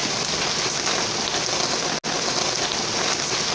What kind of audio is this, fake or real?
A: real